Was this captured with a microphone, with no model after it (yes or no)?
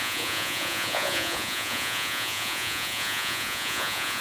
no